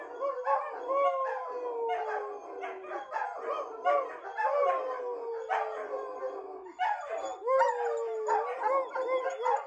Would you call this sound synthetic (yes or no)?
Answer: no